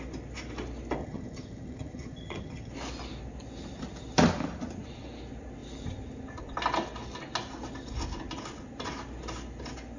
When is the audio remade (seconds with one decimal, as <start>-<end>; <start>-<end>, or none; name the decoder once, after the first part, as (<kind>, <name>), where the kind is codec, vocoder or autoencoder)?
1.0-2.7 (vocoder, HiFi-GAN)